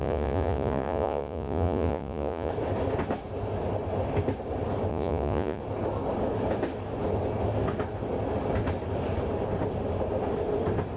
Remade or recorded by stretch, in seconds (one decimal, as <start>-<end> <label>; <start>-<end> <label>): 0.0-2.5 remade; 2.5-4.9 recorded; 4.9-5.6 remade; 5.6-11.0 recorded